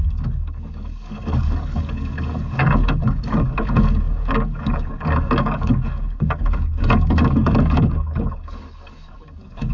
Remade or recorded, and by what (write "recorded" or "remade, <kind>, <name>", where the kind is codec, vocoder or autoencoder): remade, codec, DAC